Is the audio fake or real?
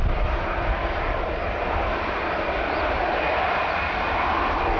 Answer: real